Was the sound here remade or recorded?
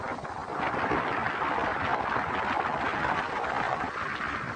recorded